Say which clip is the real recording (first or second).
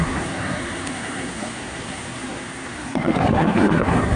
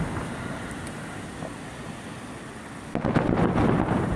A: second